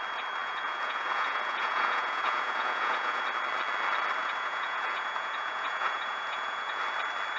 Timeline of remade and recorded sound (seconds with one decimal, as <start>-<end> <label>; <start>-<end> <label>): 0.0-0.4 recorded; 0.4-3.2 remade; 3.2-4.2 recorded; 4.2-6.8 remade; 6.8-7.4 recorded